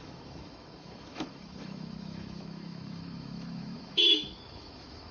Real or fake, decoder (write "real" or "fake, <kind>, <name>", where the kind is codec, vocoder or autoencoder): fake, autoencoder, DAC-VAE